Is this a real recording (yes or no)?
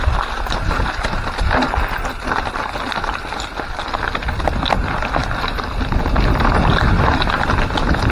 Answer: yes